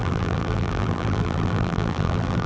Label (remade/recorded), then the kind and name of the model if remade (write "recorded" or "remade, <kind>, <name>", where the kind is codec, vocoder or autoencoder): remade, vocoder, BigVGAN v2